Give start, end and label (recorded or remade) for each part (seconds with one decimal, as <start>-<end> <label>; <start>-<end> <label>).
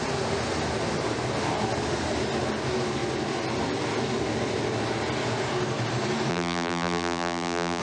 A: 0.0-6.3 recorded; 6.3-7.8 remade